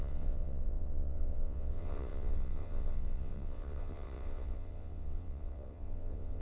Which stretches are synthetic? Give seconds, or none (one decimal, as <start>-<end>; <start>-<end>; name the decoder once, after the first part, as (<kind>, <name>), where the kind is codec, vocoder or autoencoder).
0.0-6.4 (vocoder, WaveNeXt)